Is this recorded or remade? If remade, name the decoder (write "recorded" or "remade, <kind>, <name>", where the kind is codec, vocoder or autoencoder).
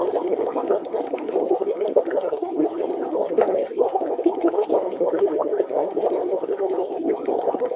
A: remade, codec, SNAC